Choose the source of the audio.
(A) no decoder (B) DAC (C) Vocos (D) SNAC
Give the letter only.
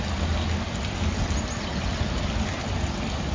A